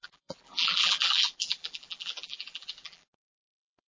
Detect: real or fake fake